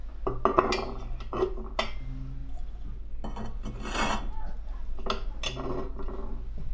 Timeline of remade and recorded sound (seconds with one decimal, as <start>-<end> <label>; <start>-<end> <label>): 0.0-6.7 recorded